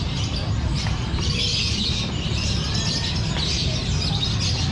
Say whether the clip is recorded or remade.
recorded